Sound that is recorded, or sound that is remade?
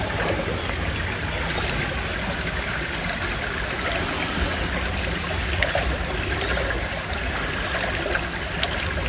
recorded